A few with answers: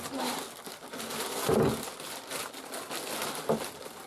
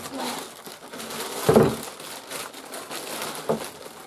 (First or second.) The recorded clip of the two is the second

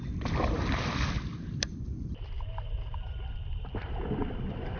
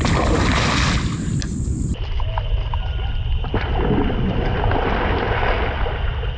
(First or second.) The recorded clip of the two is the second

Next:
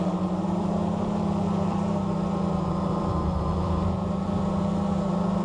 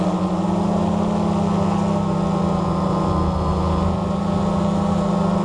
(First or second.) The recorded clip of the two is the second